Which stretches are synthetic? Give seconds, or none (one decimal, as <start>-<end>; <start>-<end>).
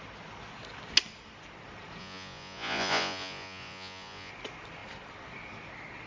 2.0-4.3